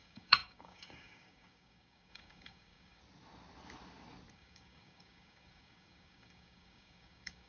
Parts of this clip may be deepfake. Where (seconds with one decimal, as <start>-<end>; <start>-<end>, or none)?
0.0-3.0; 4.3-7.5